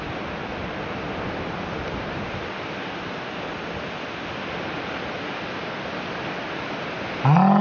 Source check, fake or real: real